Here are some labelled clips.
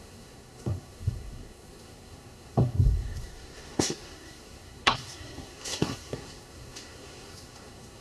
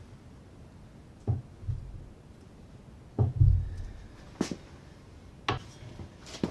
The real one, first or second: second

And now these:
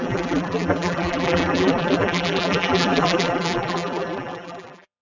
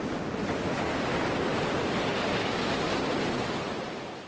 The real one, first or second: second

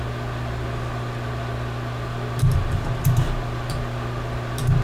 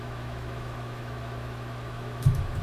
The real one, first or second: first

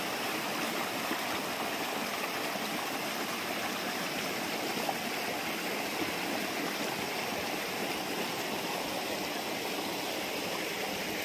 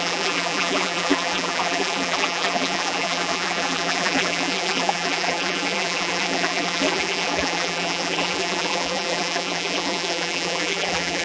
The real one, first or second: first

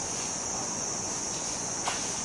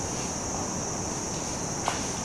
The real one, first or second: second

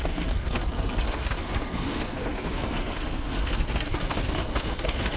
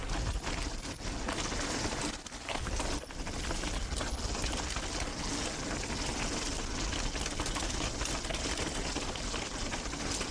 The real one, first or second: second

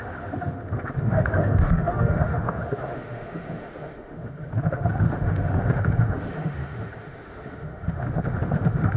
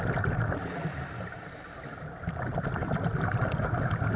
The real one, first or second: second